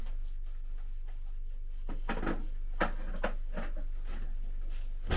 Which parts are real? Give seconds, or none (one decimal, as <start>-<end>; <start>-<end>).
0.0-5.2